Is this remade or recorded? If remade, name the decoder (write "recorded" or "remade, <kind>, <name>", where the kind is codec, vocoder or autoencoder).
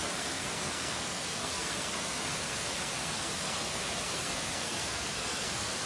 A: remade, codec, SNAC